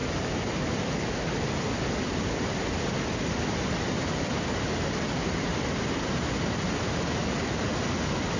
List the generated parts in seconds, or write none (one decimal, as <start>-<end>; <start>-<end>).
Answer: none